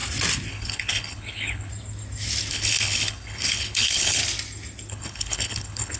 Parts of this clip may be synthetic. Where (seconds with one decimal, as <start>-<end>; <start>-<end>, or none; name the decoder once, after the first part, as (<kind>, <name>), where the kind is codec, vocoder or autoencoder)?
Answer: 0.5-1.7 (codec, HILCodec); 2.5-4.2; 4.9-6.0